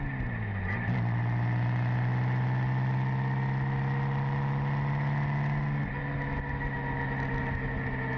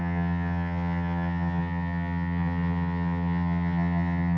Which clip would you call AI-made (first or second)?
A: second